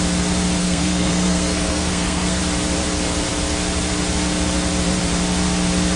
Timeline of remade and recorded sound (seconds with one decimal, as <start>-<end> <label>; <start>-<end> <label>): 0.0-0.6 recorded; 0.6-2.4 remade; 2.4-6.0 recorded